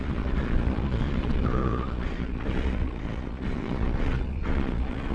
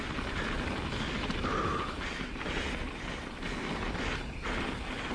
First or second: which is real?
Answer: second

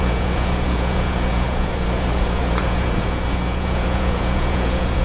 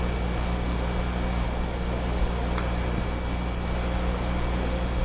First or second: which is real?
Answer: second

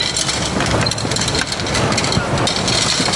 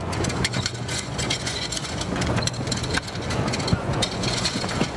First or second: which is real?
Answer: first